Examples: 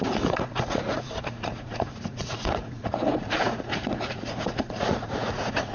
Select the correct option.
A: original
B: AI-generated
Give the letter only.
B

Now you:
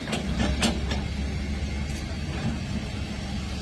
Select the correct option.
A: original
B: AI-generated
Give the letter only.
A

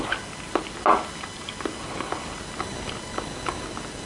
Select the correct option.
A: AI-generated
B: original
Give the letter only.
B